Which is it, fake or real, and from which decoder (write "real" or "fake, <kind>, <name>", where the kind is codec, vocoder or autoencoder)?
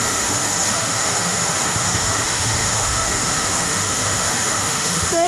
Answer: fake, autoencoder, DAC-VAE